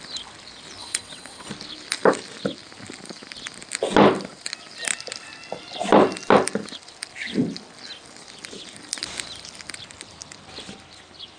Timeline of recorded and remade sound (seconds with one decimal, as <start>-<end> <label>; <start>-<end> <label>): 0.0-0.8 recorded; 0.8-1.5 remade; 1.5-11.4 recorded